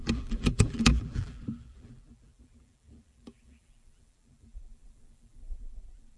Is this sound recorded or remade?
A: remade